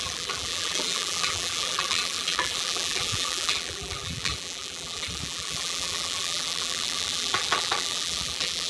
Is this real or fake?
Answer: fake